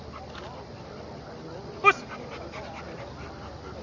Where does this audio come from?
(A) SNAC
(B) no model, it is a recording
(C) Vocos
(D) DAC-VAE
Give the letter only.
B